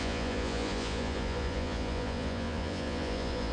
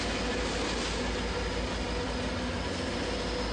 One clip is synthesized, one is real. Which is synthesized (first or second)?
first